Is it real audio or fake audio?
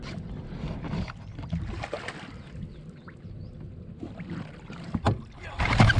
real